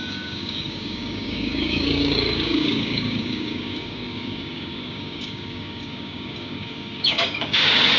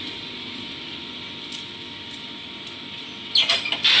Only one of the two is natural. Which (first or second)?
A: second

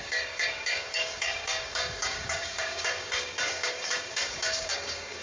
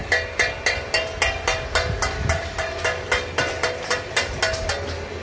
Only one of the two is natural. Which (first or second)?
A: second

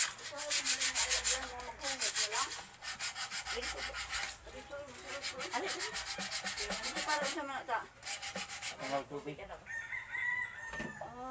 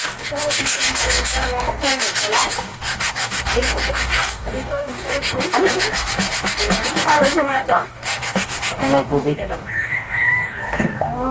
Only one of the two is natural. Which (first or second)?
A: first